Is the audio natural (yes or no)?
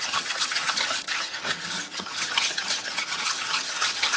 no